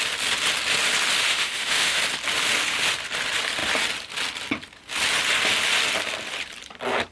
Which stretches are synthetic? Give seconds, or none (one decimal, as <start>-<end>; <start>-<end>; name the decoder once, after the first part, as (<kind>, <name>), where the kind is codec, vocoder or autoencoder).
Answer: 1.3-2.0 (autoencoder, DAC-VAE)